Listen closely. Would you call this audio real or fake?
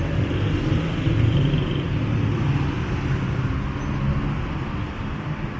real